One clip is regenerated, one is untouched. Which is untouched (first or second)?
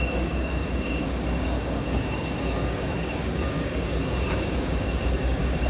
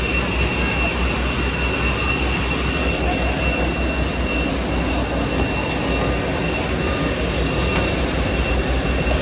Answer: second